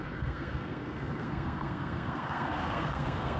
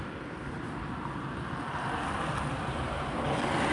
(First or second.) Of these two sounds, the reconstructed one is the first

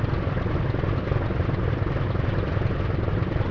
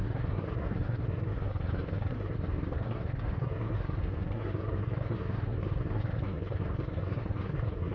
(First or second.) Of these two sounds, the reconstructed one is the second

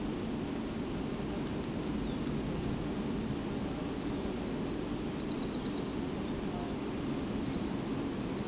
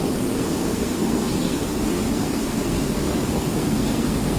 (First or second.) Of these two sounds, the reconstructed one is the second